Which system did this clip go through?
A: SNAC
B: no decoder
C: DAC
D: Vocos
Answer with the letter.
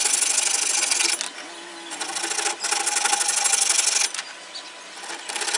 B